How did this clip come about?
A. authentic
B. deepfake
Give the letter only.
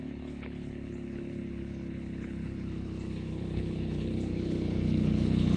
B